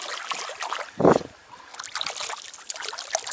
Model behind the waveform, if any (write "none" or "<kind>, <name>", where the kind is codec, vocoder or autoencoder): none